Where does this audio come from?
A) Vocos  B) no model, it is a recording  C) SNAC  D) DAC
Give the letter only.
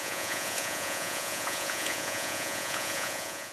A